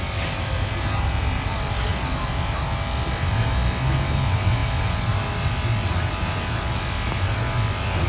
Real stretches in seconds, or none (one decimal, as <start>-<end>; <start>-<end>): 0.0-8.1